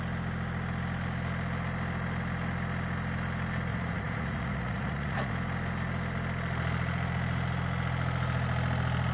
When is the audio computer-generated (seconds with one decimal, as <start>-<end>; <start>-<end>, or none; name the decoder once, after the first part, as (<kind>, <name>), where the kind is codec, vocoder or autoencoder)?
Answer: 3.7-5.3 (vocoder, Vocos)